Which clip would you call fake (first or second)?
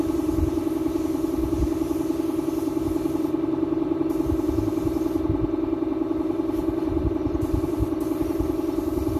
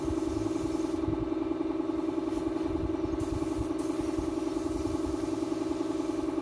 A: first